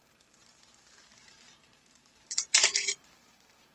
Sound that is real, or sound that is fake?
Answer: fake